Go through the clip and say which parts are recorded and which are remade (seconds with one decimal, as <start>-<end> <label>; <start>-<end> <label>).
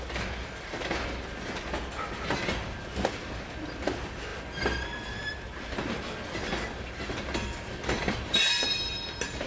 0.0-9.5 recorded